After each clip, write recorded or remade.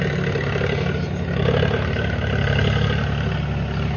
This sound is recorded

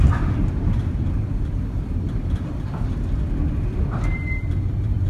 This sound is remade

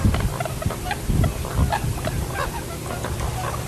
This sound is recorded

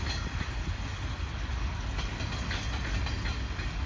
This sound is recorded